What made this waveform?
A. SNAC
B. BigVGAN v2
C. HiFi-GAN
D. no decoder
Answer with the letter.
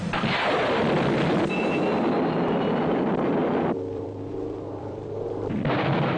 B